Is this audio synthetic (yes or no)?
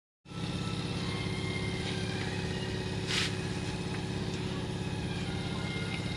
no